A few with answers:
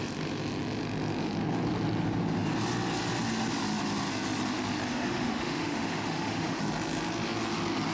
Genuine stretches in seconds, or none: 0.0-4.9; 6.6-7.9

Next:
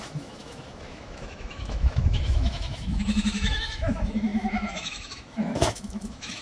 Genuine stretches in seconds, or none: none